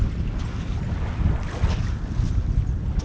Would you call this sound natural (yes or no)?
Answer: yes